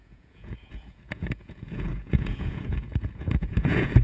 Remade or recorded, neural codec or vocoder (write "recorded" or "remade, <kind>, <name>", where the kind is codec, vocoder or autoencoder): remade, vocoder, Vocos